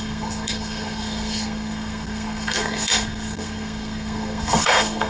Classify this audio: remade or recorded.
remade